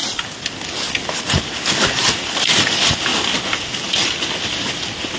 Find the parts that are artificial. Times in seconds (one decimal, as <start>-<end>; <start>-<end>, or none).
none